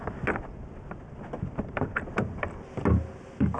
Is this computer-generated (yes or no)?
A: no